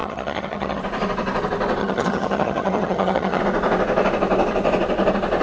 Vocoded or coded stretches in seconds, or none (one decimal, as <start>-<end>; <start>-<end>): 0.0-0.8; 1.8-3.4